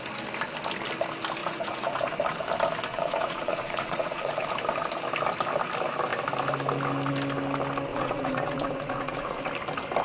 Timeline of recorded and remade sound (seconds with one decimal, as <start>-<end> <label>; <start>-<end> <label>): 0.0-1.4 recorded; 1.4-2.0 remade; 2.0-2.9 recorded; 2.9-4.5 remade; 4.5-7.9 recorded; 7.9-9.5 remade; 9.5-10.0 recorded